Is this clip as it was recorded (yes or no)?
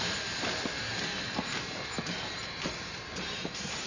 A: no